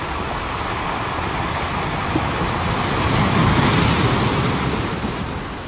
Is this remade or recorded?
recorded